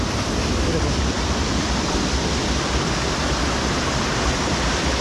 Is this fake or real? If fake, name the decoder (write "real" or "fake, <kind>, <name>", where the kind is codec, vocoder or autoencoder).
real